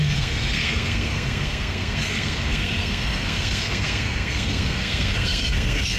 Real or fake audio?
fake